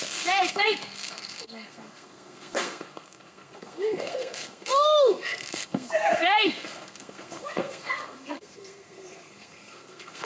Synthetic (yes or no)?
yes